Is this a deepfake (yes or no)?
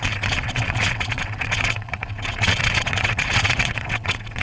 yes